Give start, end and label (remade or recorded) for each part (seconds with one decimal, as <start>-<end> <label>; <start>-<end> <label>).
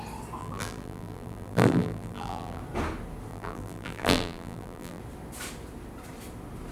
0.0-0.4 recorded; 0.4-2.6 remade; 2.6-3.3 recorded; 3.3-5.0 remade; 5.0-6.7 recorded